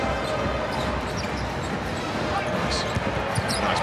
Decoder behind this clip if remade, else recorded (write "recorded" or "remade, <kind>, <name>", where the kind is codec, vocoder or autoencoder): recorded